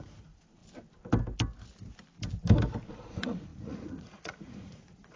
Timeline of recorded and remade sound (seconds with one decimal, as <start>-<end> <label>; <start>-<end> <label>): 0.0-0.6 remade; 0.6-2.9 recorded; 2.9-5.2 remade